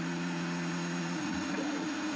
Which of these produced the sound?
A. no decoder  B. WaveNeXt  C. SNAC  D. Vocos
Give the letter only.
D